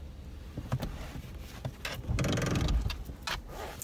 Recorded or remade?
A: recorded